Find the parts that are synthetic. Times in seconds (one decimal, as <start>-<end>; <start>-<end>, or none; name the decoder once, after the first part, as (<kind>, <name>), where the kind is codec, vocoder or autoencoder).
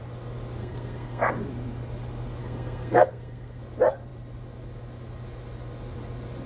0.6-1.3 (codec, SNAC); 2.4-3.6